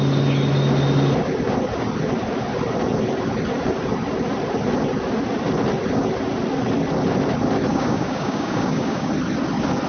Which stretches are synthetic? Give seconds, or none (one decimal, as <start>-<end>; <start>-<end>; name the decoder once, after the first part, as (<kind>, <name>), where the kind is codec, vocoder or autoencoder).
7.7-9.1 (codec, DAC)